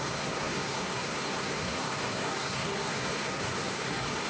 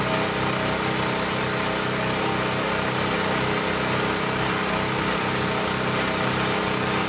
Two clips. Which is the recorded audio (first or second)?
second